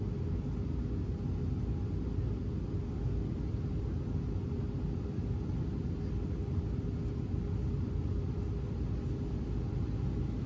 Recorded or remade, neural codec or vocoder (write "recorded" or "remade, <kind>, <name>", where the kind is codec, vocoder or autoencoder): recorded